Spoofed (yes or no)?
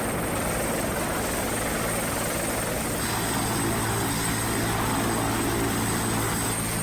no